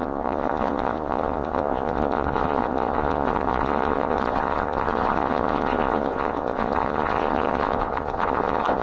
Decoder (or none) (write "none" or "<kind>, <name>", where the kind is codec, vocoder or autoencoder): vocoder, Vocos